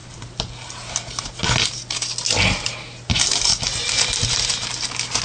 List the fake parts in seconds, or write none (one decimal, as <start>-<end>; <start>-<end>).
none